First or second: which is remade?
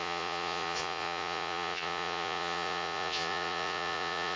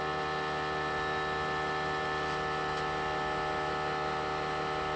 first